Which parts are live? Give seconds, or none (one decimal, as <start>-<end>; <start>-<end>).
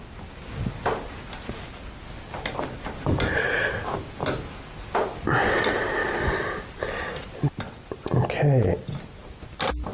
0.0-9.9